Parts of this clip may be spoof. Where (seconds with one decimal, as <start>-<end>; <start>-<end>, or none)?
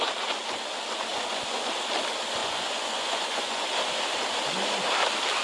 1.1-1.7; 2.4-3.7